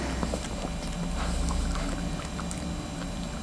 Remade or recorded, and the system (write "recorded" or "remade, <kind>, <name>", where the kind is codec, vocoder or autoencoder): recorded